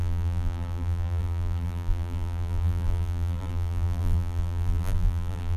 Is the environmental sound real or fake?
fake